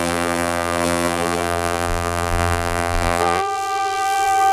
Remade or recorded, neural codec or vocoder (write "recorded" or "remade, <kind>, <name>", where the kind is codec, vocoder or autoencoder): remade, vocoder, BigVGAN v2